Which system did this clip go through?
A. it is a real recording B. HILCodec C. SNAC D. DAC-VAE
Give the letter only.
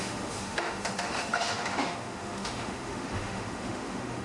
D